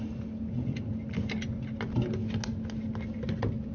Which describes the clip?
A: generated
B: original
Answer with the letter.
B